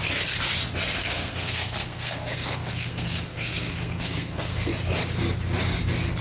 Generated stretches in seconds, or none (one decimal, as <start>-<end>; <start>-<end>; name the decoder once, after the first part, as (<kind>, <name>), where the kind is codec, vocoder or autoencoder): 1.0-4.7 (codec, SNAC)